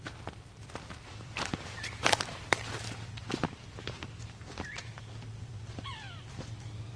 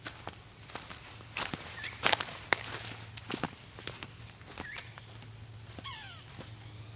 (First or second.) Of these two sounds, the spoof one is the first